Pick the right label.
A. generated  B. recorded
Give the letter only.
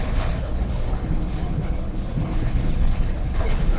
A